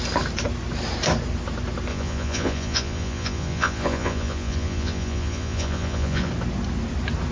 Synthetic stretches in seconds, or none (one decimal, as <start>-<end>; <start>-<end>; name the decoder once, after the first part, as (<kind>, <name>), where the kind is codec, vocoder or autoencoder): 1.9-6.3 (vocoder, Vocos)